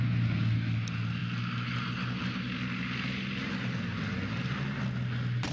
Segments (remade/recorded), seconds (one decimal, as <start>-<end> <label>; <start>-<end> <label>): 0.0-5.5 recorded